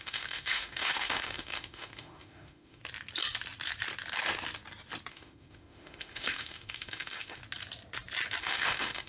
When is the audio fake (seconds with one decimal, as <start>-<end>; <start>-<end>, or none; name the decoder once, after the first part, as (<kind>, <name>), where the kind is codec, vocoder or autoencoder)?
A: 0.0-2.8 (autoencoder, DAC-VAE); 5.1-7.4; 8.4-9.1